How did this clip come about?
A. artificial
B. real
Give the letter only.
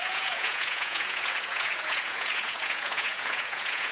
A